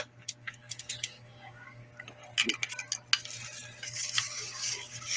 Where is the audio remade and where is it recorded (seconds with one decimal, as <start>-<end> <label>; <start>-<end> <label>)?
0.0-1.8 remade; 1.8-3.8 recorded; 3.8-5.2 remade